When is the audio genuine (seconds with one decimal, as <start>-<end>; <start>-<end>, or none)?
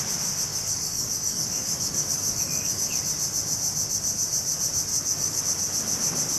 0.0-0.5; 3.0-4.9; 5.4-6.4